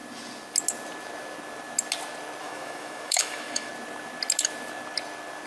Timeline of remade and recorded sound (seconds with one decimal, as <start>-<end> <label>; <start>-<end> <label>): 0.0-2.4 recorded; 2.4-3.7 remade; 3.7-5.5 recorded

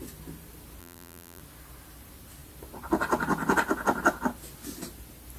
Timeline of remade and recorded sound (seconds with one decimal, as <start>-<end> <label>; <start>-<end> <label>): 0.0-0.8 recorded; 0.8-1.4 remade; 1.4-5.4 recorded

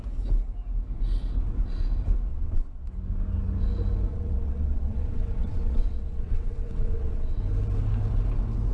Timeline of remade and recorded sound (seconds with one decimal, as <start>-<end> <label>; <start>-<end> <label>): 0.0-2.3 recorded; 2.3-2.9 remade; 2.9-4.1 recorded; 4.1-7.4 remade; 7.4-8.7 recorded